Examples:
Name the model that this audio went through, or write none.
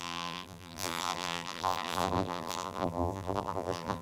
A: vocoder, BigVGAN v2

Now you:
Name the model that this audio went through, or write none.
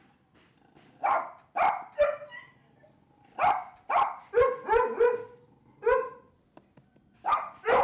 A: none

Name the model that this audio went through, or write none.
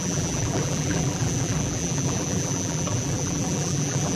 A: vocoder, BigVGAN v2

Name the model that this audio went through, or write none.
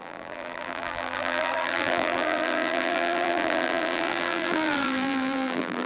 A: vocoder, BigVGAN v2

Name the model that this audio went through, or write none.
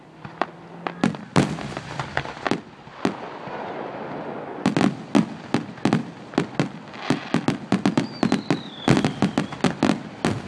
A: none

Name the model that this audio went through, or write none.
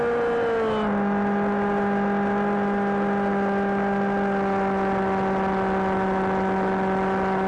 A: none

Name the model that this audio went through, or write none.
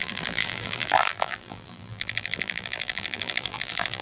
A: vocoder, BigVGAN v2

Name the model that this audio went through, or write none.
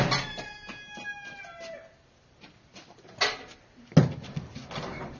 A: none